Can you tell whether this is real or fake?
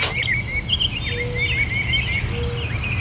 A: real